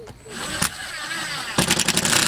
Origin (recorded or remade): recorded